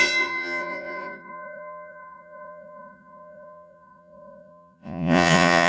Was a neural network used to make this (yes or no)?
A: yes